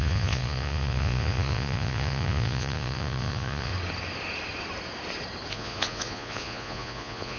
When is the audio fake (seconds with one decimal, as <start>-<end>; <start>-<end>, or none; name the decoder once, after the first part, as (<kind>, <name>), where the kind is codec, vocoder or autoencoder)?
0.0-3.7 (vocoder, Vocos); 5.5-7.4